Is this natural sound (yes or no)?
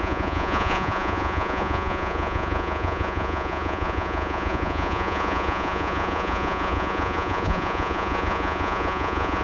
no